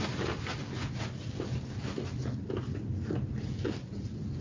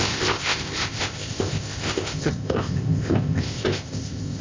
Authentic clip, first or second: first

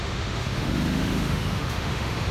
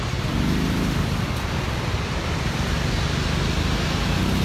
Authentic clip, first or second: second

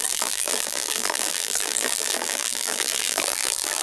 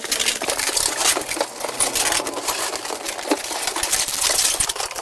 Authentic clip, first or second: second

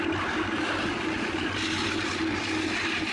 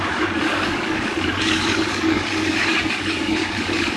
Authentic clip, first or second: first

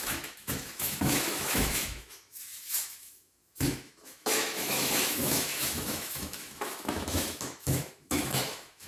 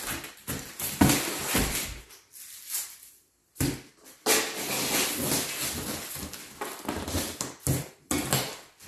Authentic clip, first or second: second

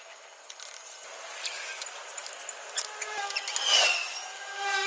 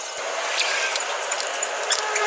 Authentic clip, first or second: first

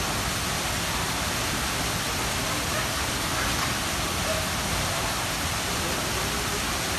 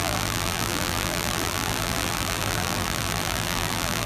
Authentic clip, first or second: first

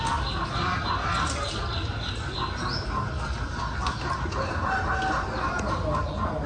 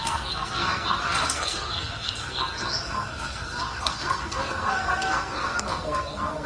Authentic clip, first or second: first